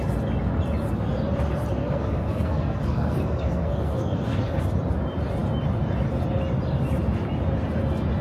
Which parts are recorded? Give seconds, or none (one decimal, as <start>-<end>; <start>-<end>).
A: 0.0-1.8; 4.6-8.2